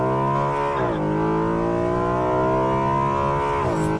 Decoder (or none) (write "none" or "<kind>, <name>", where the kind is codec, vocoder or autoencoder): none